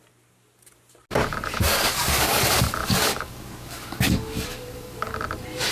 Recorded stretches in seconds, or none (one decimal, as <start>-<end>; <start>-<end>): 0.0-1.7; 2.4-2.8; 5.1-5.7